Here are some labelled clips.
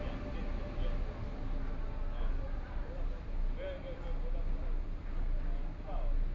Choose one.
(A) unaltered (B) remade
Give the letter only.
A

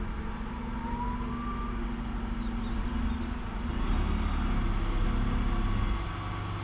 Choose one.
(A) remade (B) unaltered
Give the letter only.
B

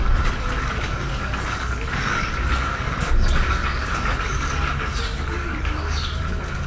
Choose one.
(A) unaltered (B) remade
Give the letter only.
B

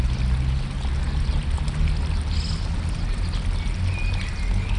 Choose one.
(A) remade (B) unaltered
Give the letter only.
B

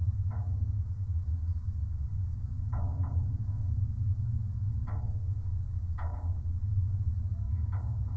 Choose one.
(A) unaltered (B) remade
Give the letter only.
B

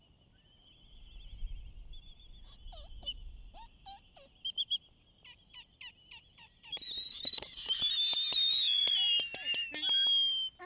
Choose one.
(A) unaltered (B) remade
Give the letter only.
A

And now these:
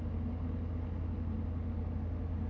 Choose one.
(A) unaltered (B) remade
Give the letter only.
A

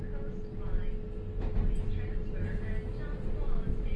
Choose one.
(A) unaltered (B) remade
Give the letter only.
A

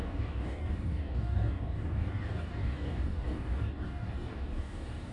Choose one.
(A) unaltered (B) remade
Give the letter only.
B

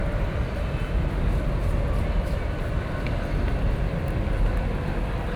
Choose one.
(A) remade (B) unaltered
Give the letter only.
B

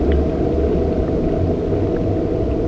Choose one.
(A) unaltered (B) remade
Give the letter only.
A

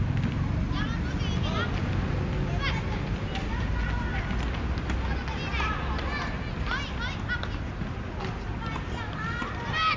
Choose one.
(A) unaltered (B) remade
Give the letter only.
A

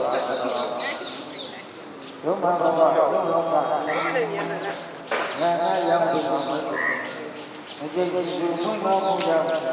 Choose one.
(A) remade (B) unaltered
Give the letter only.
B